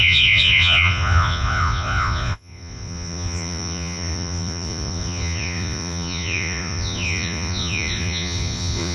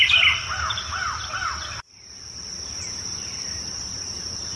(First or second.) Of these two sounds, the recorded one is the second